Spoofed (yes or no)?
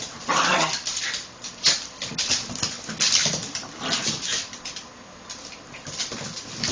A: no